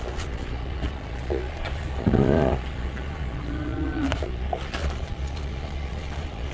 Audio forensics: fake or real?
fake